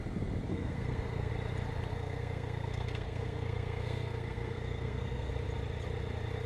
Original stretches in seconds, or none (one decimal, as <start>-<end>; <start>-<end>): 0.0-0.5; 1.3-1.9; 5.3-6.5